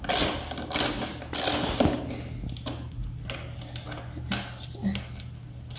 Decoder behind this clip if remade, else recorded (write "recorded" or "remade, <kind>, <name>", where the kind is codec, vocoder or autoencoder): recorded